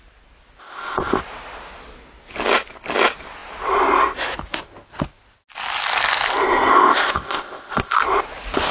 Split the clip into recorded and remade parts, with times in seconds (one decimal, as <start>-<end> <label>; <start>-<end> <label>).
0.0-0.6 recorded; 0.6-1.2 remade; 1.2-6.7 recorded; 6.7-8.0 remade; 8.0-8.7 recorded